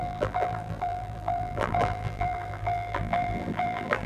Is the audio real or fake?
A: fake